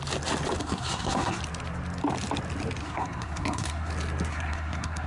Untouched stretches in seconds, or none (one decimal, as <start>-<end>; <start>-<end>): 0.0-0.6; 1.4-2.8; 3.9-4.3